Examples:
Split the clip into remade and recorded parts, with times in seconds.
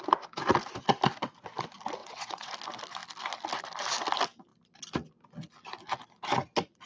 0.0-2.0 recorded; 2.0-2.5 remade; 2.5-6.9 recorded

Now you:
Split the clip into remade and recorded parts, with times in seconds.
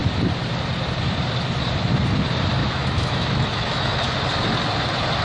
0.0-2.6 recorded; 2.6-4.1 remade; 4.1-5.2 recorded